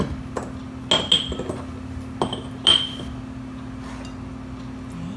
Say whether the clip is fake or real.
real